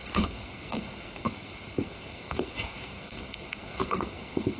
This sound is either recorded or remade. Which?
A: remade